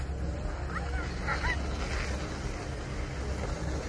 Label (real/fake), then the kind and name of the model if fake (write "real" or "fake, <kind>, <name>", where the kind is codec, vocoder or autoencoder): real